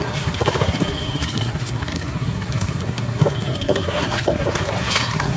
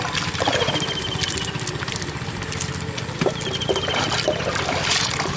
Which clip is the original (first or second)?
second